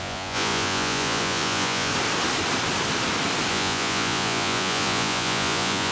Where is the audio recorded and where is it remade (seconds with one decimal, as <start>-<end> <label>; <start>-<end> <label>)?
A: 0.0-1.9 remade; 1.9-3.5 recorded; 3.5-5.9 remade